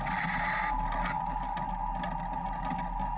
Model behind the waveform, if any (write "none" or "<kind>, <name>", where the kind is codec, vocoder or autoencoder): none